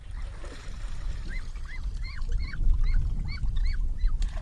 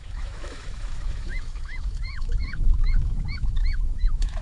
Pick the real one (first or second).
first